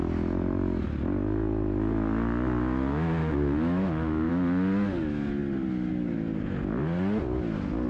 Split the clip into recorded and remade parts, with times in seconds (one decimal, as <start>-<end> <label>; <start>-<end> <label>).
0.0-3.2 recorded; 3.2-4.3 remade; 4.3-7.9 recorded